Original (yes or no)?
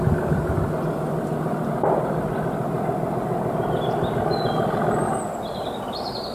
yes